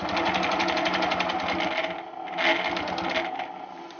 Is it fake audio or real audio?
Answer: real